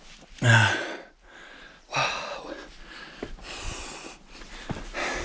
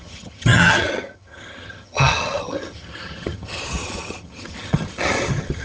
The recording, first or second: first